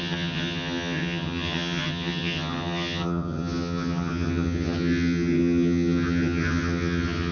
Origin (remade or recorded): remade